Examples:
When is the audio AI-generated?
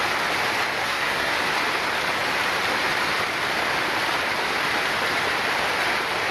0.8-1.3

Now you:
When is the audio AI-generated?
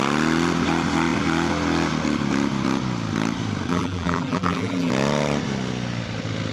3.7-4.9